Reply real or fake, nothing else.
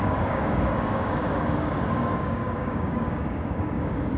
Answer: fake